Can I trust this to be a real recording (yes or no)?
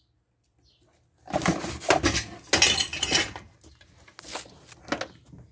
yes